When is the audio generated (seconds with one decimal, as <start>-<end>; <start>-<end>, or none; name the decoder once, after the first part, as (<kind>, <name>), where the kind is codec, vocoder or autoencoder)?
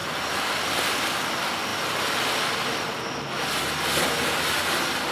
none